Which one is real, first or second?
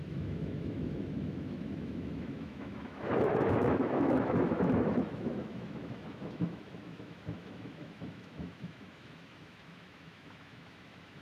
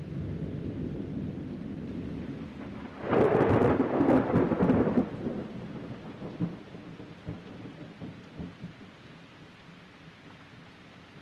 second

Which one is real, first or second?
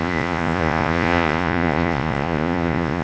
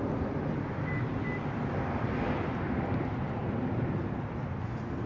second